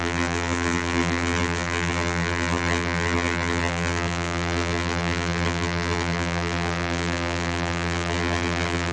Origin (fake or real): fake